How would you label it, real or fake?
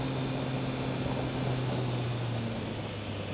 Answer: real